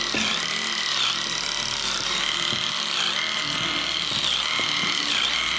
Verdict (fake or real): real